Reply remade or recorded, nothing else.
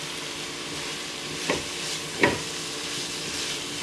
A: remade